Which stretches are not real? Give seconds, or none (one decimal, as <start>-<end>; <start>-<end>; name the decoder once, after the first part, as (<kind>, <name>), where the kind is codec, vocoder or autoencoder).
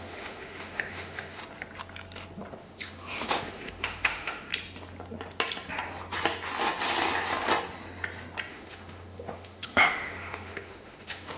0.0-1.4 (autoencoder, DAC-VAE); 2.6-4.5; 8.5-11.4